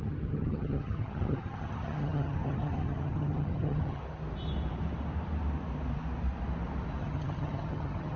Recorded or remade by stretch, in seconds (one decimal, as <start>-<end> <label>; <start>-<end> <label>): 0.0-4.0 remade; 4.0-7.0 recorded; 7.0-8.2 remade